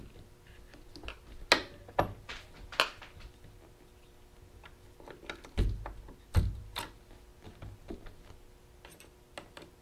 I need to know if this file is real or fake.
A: real